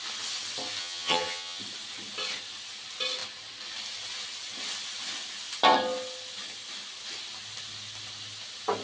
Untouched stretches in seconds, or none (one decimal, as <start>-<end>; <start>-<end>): 0.0-0.8; 1.6-8.8